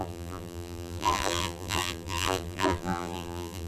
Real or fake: fake